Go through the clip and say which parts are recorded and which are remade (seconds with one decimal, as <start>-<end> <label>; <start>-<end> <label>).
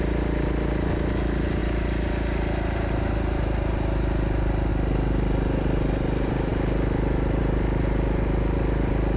0.0-9.2 recorded